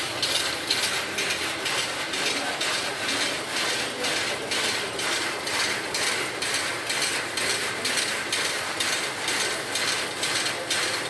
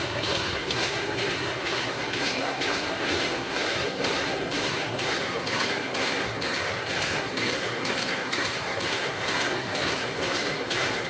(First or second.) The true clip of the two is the first